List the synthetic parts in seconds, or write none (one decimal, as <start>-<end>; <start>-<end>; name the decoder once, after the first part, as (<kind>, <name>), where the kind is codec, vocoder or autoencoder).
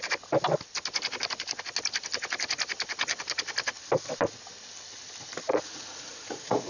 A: 5.5-6.7 (vocoder, Vocos)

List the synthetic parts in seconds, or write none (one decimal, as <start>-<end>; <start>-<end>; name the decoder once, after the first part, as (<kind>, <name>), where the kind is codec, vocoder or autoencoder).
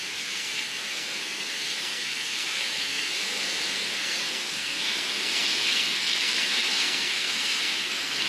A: 0.0-8.3 (codec, SNAC)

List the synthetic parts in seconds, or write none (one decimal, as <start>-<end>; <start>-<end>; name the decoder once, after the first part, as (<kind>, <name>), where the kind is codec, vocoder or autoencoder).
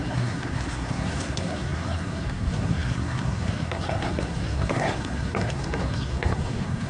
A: 0.0-6.9 (codec, SNAC)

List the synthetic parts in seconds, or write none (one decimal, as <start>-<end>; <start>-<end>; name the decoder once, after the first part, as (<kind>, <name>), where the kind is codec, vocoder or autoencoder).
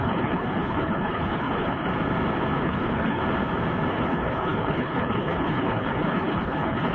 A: 0.0-1.9 (codec, HILCodec); 2.6-3.2; 3.9-6.9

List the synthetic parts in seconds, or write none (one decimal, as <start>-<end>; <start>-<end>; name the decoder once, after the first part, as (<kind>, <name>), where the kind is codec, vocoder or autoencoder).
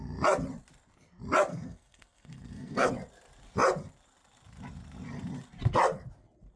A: 1.5-2.9 (codec, SNAC)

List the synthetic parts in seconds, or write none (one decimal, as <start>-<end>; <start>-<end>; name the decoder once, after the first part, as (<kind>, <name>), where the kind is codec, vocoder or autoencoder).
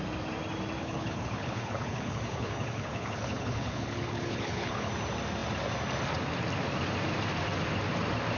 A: 0.8-4.9 (codec, HILCodec)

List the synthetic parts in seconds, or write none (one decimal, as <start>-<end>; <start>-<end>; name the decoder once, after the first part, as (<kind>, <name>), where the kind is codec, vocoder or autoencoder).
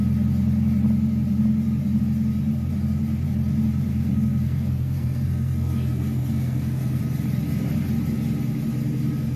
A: 3.9-7.0 (codec, SNAC)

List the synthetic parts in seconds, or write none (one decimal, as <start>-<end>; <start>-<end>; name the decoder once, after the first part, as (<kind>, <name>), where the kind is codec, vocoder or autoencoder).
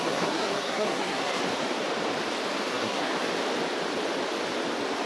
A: 0.0-1.4 (codec, SNAC); 2.7-3.1